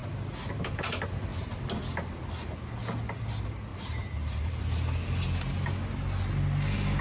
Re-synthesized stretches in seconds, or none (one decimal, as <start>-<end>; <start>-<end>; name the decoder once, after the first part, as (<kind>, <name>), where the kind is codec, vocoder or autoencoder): 3.7-4.6 (vocoder, BigVGAN v2)